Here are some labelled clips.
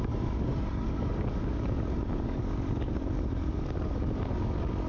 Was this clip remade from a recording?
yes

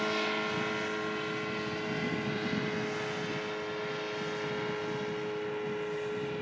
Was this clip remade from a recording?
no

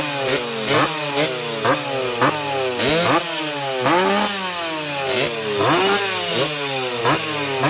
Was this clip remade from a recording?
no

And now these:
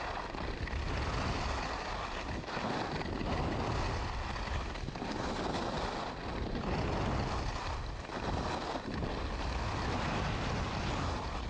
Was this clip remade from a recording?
no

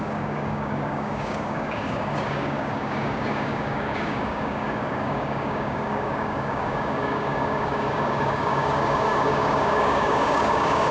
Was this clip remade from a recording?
yes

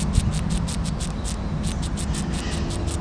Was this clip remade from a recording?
no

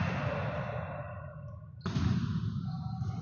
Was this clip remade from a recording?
no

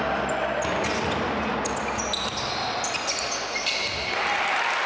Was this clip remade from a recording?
no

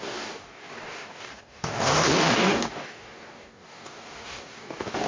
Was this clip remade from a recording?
yes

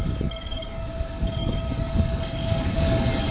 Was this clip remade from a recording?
yes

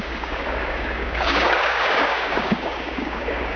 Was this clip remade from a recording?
yes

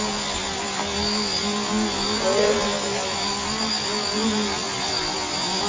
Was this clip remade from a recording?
no